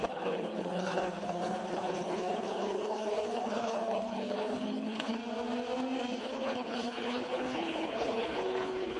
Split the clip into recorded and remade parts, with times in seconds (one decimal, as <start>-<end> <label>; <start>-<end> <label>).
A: 0.0-5.2 remade; 5.2-6.2 recorded; 6.2-9.0 remade